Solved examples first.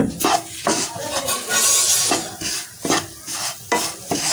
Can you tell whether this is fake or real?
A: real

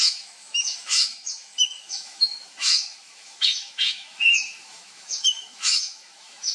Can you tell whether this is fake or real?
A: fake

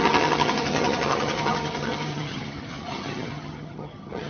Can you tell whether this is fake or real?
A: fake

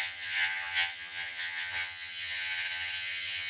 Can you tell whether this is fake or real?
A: fake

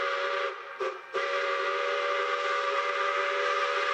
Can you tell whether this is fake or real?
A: real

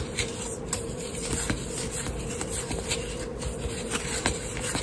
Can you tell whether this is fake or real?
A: real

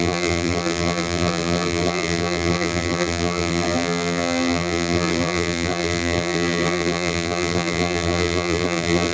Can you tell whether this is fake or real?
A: fake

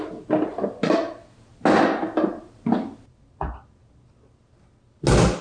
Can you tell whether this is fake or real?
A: real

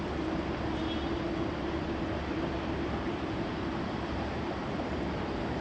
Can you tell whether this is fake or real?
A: fake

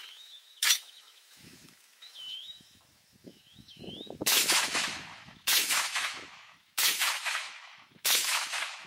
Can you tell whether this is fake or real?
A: fake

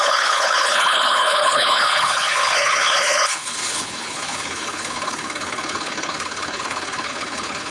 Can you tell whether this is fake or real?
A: fake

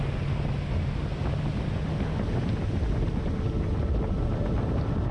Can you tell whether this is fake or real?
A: real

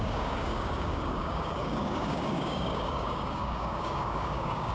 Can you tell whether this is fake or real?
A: fake